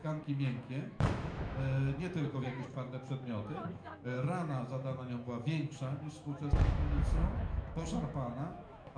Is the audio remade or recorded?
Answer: remade